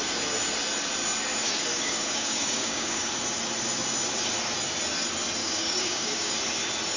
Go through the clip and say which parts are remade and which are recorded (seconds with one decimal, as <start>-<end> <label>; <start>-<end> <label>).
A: 0.0-1.7 recorded; 1.7-3.1 remade; 3.1-5.4 recorded; 5.4-6.3 remade; 6.3-7.0 recorded